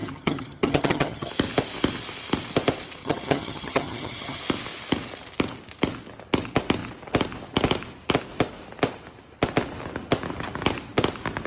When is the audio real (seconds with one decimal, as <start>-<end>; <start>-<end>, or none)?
1.3-3.0; 4.4-11.5